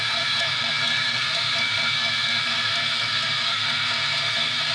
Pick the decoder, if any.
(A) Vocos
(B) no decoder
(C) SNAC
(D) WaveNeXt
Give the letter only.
C